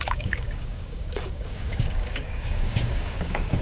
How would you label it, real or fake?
fake